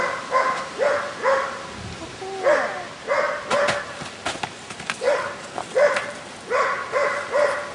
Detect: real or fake real